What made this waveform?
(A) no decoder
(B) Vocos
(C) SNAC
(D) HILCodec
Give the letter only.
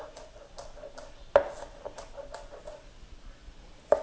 A